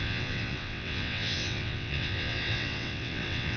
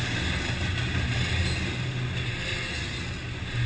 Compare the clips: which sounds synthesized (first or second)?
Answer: first